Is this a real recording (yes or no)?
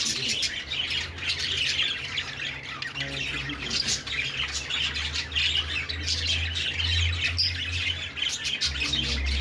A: yes